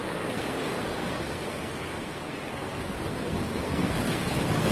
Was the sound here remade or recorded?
remade